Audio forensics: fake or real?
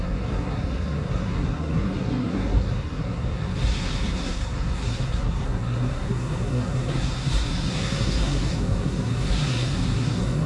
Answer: fake